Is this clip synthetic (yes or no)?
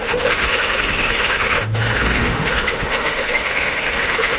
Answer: yes